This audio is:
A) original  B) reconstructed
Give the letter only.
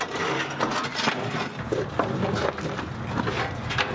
A